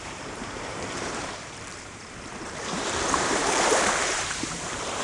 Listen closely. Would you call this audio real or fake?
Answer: fake